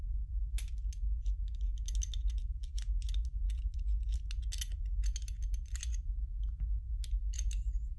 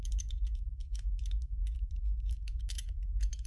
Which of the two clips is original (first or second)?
first